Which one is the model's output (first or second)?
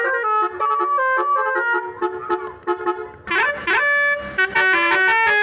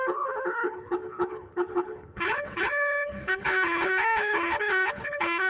second